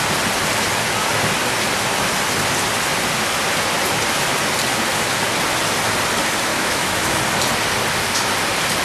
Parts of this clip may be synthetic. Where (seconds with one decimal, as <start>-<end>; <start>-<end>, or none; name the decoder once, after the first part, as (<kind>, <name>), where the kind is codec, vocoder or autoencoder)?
6.5-7.2 (autoencoder, DAC-VAE)